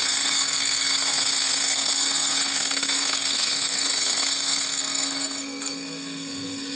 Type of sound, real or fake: fake